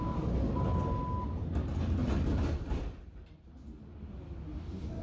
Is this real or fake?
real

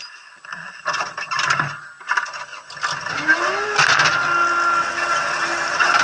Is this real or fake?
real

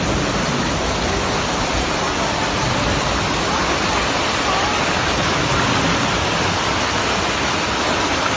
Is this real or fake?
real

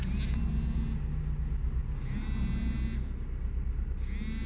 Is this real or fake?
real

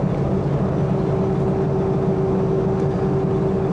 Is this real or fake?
real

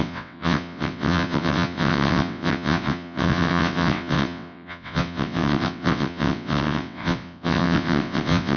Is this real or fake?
fake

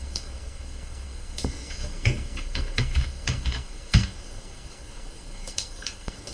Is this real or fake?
fake